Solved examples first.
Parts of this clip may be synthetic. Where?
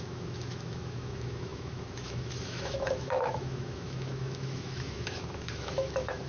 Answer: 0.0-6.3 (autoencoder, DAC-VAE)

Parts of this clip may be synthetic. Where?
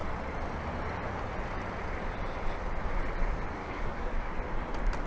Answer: 3.6-4.3 (codec, DAC)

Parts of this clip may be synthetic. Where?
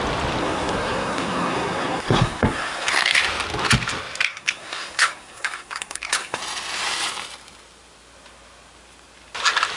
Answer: 0.4-3.2 (codec, SNAC); 4.3-6.4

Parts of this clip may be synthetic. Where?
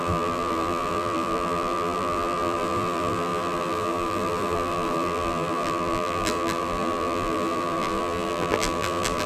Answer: 0.0-9.3 (vocoder, BigVGAN v2)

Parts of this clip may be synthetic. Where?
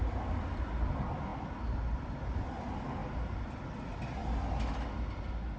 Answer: none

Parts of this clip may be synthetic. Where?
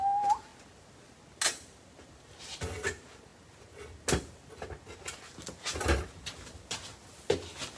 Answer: none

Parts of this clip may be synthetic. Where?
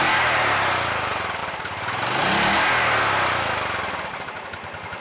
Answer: none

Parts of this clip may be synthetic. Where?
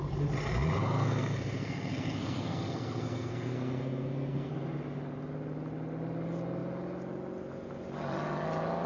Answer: 0.8-4.5 (codec, SNAC)